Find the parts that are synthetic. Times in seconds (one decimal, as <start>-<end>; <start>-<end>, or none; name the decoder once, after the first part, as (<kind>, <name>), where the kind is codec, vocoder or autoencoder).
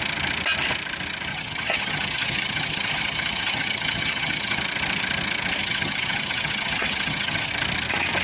1.3-4.6 (vocoder, HiFi-GAN); 5.6-7.5